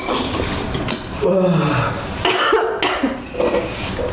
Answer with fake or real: real